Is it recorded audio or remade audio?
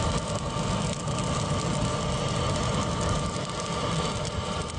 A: recorded